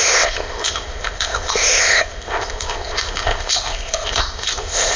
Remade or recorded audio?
remade